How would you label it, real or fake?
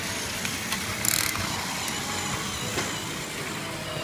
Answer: real